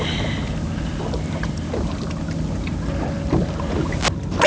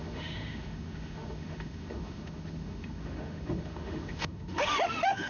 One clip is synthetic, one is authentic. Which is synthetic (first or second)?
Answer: second